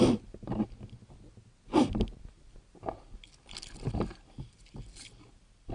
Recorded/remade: recorded